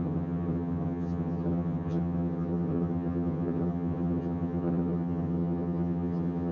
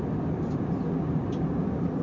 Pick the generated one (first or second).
first